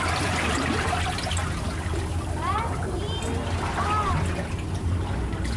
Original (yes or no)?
yes